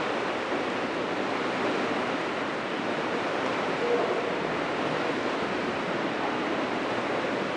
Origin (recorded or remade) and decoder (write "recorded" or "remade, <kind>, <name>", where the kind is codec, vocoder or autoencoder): recorded